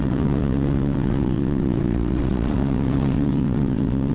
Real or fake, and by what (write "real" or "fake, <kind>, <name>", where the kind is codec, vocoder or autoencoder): fake, vocoder, WaveNeXt